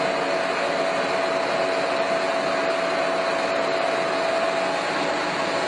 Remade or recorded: recorded